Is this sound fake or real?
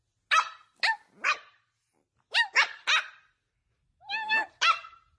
real